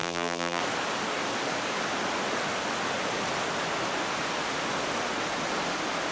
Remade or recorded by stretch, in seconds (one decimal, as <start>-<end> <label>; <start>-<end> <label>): 0.0-0.6 remade; 0.6-6.1 recorded